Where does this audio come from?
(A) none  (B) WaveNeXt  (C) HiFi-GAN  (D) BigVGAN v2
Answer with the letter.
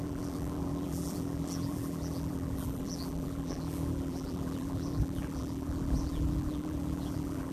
D